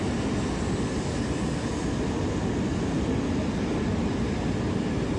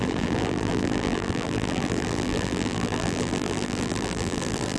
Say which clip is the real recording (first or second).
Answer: first